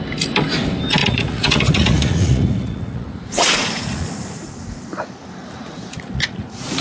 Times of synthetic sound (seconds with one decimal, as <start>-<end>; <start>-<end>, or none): 1.0-4.1; 5.6-6.8